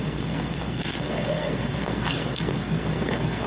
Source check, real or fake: fake